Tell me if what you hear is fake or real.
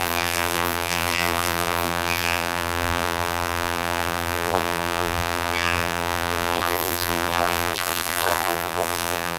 fake